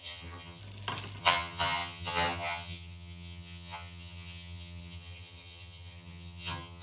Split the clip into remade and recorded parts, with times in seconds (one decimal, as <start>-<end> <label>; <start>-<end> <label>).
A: 0.0-0.6 remade; 0.6-1.2 recorded; 1.2-6.8 remade